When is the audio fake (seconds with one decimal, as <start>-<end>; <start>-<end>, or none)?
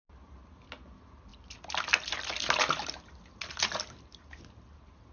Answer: none